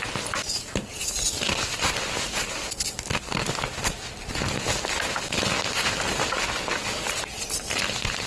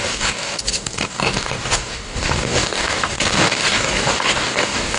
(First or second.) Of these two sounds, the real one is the first